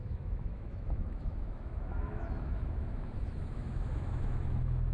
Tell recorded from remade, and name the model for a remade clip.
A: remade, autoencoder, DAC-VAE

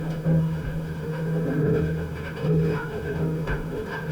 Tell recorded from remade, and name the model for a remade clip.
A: remade, autoencoder, DAC-VAE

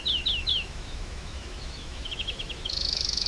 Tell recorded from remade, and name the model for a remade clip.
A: remade, autoencoder, DAC-VAE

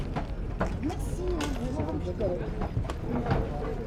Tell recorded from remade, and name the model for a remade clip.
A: recorded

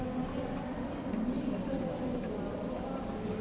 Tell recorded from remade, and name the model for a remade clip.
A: recorded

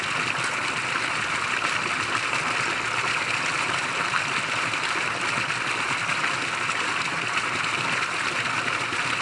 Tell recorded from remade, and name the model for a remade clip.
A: recorded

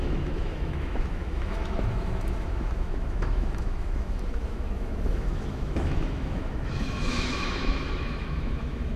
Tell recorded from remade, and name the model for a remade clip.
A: remade, autoencoder, DAC-VAE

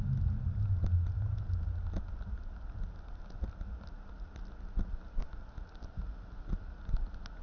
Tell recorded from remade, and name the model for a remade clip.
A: recorded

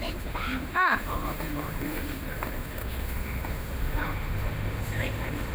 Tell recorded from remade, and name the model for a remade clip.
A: remade, autoencoder, DAC-VAE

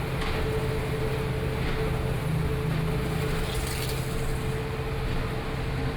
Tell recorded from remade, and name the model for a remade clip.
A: recorded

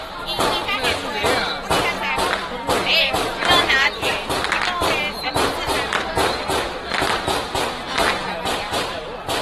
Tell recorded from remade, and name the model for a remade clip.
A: recorded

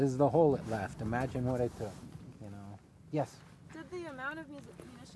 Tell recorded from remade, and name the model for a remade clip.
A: recorded